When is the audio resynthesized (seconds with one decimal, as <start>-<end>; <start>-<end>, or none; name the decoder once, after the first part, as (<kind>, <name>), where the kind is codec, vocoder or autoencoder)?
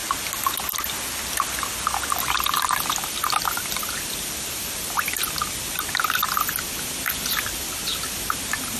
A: none